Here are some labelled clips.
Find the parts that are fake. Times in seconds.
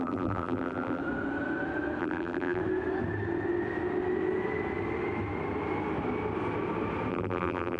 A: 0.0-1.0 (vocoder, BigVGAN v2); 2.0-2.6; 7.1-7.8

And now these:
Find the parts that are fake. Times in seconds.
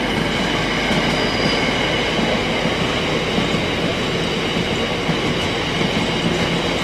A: none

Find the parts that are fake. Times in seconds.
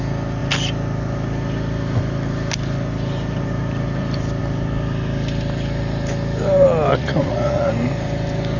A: 6.9-7.7 (vocoder, Vocos)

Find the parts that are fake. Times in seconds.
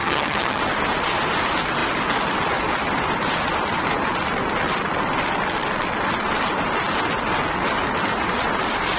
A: 0.0-0.6 (vocoder, HiFi-GAN)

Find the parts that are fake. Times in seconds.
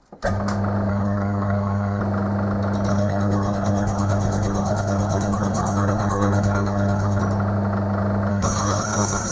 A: 0.9-2.0 (codec, SNAC); 2.9-7.2; 8.3-9.3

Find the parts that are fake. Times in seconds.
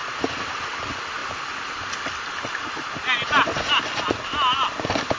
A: none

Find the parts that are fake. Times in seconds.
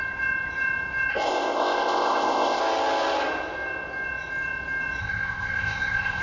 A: 1.1-2.6 (codec, ZipCodec); 5.0-6.2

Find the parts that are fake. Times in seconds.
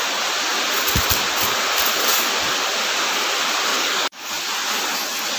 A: 3.7-4.3 (codec, DAC)